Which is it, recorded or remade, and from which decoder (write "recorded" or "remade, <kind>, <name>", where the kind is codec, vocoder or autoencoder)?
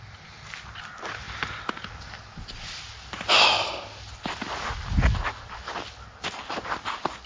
recorded